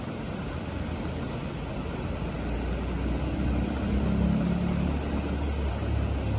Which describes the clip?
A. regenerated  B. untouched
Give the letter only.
B